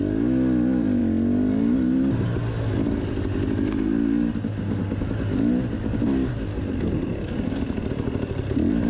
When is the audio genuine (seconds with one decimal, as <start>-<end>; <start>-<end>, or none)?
0.0-8.9